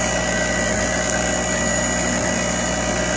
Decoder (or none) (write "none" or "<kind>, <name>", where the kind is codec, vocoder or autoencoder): none